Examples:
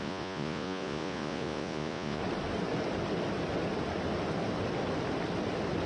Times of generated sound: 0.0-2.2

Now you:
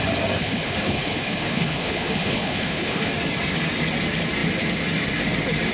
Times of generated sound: 0.4-3.1

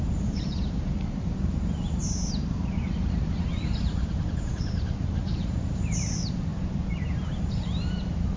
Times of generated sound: 0.0-6.5; 7.1-8.4

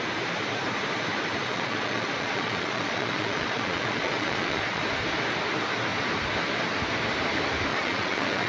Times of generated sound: 1.4-4.8; 7.7-8.5

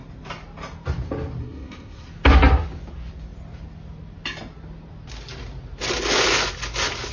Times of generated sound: 1.4-2.1

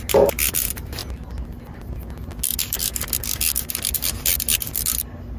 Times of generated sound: none